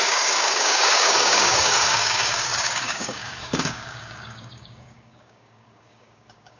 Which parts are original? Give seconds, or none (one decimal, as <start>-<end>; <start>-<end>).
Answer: none